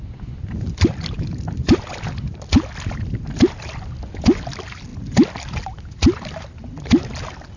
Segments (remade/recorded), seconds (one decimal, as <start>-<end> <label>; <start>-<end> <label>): 0.0-7.6 recorded